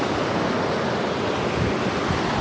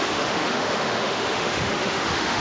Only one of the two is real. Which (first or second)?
first